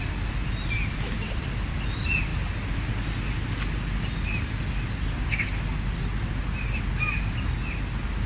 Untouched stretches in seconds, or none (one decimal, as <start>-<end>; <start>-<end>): 0.0-8.3

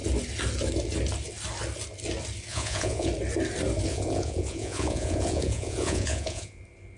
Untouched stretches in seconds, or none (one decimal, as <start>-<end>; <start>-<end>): 0.0-2.5; 3.1-3.9; 6.6-7.0

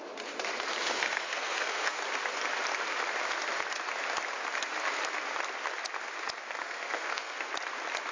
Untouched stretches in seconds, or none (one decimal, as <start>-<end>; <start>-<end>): 0.0-0.9; 2.0-6.6; 7.5-8.1

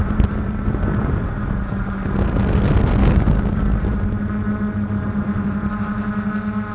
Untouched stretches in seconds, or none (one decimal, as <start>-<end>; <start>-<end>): 0.0-3.0; 3.6-6.7

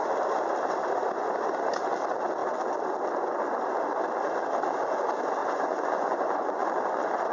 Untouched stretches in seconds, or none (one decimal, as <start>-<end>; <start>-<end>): 0.0-5.4

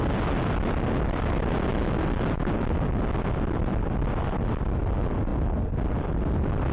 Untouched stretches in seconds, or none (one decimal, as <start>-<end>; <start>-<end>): 0.0-6.7

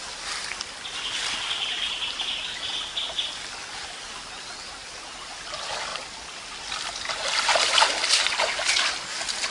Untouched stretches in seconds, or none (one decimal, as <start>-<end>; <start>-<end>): 0.0-4.8; 5.3-5.9; 6.9-9.5

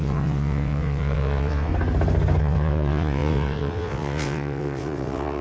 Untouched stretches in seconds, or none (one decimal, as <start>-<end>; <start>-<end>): 1.7-2.4